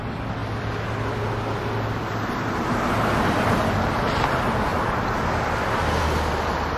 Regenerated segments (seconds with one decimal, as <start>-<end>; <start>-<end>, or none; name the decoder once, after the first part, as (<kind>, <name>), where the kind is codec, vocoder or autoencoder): 0.0-4.7 (vocoder, BigVGAN v2); 6.0-6.8